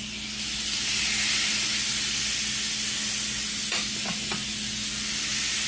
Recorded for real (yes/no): yes